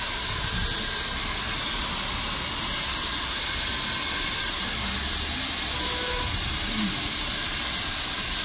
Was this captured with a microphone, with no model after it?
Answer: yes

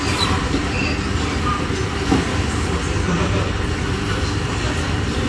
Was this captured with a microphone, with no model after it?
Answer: yes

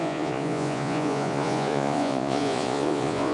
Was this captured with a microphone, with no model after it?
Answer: no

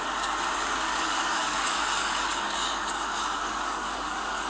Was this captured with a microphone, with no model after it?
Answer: no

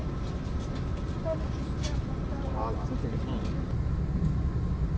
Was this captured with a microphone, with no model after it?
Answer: yes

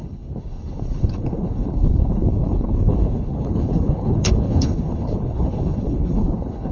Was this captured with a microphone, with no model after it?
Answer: no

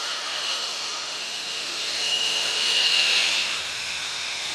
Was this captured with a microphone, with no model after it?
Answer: no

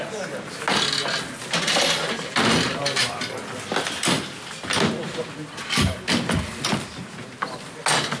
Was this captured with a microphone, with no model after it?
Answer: yes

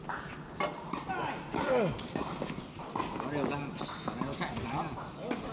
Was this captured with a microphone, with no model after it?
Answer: yes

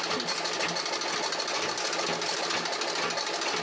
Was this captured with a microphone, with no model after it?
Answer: yes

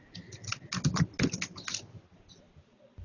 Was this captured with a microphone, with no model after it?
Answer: yes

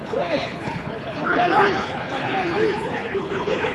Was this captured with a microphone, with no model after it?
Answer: no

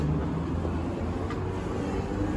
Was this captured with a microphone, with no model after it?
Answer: yes